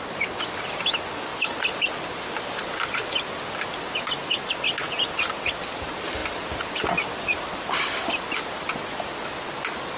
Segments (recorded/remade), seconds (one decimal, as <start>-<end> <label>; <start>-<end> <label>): 0.0-10.0 recorded